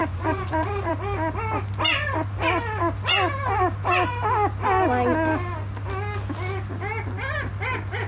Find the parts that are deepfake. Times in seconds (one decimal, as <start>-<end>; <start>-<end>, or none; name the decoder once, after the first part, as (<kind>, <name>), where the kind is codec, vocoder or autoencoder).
0.0-0.9 (vocoder, Vocos)